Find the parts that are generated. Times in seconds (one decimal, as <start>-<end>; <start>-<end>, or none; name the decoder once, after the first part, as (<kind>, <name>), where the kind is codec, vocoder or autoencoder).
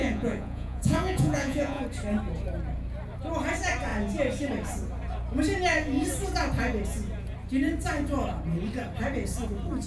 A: 0.0-1.8 (vocoder, Vocos)